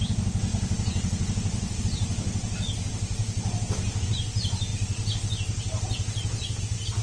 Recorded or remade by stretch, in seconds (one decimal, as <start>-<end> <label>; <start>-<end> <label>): 0.0-7.0 recorded